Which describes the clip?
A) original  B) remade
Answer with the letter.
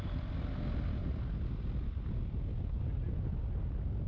A